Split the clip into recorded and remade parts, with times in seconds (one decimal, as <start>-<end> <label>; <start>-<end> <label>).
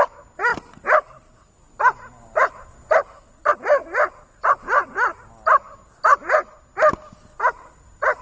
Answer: 0.0-8.2 recorded